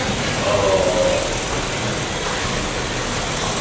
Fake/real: real